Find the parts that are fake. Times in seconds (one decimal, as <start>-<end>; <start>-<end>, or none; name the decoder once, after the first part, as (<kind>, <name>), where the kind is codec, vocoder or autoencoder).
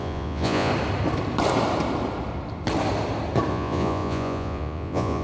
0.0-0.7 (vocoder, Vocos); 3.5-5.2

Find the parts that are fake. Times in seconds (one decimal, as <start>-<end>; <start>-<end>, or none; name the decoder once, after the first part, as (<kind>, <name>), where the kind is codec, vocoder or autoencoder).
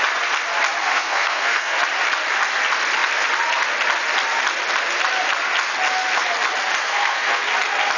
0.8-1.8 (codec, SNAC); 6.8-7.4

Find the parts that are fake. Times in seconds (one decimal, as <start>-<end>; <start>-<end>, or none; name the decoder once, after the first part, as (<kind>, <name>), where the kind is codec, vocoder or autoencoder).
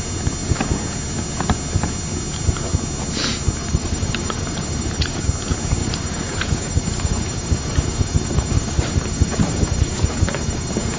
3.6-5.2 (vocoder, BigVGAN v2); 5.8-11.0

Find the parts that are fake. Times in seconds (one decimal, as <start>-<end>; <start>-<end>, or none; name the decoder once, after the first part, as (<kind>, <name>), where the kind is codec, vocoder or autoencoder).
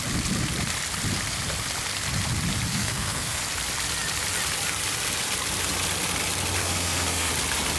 2.7-3.4 (codec, SNAC); 6.6-7.3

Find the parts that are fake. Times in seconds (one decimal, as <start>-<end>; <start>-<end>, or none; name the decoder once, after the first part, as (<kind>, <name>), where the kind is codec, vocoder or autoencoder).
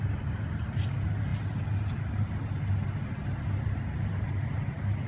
none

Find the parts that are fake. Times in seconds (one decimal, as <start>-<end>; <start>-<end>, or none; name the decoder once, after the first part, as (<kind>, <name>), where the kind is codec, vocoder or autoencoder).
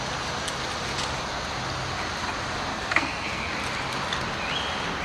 2.7-3.5 (codec, SNAC)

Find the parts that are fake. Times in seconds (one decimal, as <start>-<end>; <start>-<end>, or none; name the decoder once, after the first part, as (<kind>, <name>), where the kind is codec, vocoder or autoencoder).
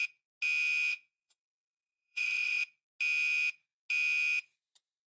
0.9-2.6 (vocoder, WaveNeXt)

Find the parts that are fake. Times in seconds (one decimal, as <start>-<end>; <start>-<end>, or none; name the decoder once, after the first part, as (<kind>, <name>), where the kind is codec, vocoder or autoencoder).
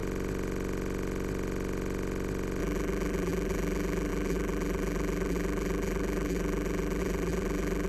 2.6-7.9 (vocoder, BigVGAN v2)